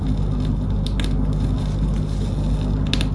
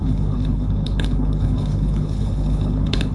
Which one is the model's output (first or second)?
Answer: second